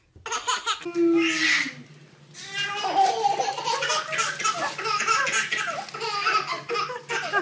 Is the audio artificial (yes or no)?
no